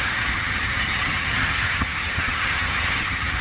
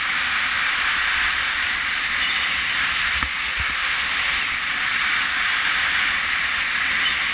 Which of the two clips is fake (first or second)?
first